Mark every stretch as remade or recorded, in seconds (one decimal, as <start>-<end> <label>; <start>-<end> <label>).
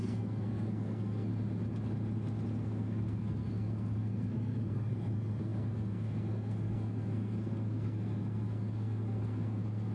0.0-1.3 remade; 1.3-2.6 recorded; 2.6-9.9 remade